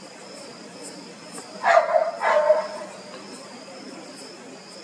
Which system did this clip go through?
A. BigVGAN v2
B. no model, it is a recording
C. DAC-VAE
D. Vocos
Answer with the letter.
B